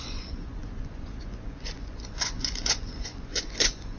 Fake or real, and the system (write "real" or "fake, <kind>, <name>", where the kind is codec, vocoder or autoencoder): fake, vocoder, Vocos